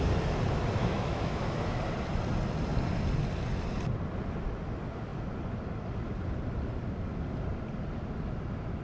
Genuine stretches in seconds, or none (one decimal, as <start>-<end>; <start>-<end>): 0.0-0.8; 1.8-8.8